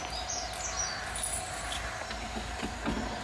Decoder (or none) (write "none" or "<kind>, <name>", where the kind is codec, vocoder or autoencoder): none